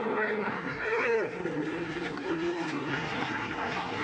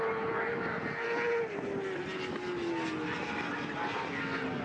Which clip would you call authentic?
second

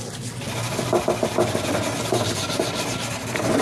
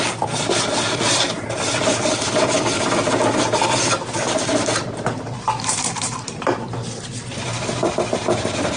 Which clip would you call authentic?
first